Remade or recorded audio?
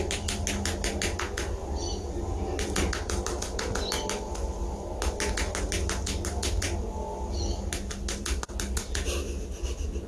recorded